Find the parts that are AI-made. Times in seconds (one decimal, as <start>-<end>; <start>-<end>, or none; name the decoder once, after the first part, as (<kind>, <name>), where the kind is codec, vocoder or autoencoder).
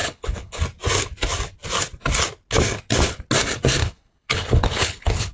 0.0-0.6 (codec, HILCodec); 3.8-5.3